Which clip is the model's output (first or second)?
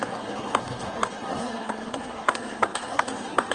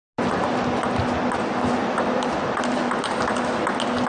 first